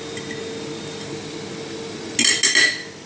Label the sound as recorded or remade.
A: recorded